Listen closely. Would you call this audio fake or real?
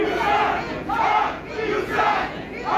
fake